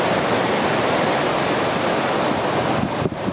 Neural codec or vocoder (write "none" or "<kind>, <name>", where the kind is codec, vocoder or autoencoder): none